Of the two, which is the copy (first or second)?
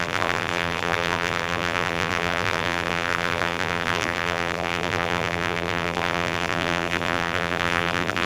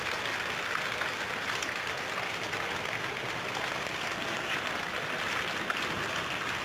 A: first